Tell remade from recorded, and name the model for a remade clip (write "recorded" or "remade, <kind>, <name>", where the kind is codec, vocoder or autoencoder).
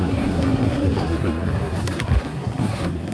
remade, codec, SNAC